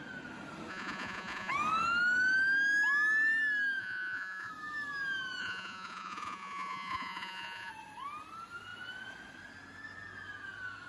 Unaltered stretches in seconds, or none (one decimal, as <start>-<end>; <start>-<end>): 0.0-0.7; 1.5-3.8; 4.5-5.4; 7.7-10.9